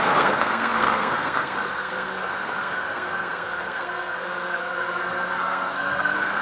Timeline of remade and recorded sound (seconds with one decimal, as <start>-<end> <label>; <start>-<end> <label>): 0.0-6.4 remade